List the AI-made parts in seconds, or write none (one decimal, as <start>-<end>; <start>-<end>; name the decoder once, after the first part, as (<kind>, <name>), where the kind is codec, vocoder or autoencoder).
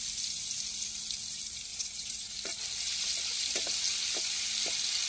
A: 1.7-2.4 (vocoder, WaveNeXt)